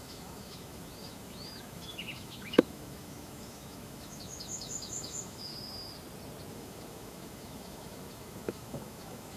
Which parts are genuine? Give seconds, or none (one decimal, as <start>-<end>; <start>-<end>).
5.5-6.5

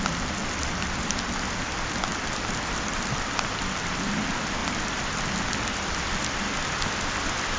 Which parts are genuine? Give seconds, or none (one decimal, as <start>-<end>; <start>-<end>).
0.0-2.1; 4.0-4.6; 5.2-7.6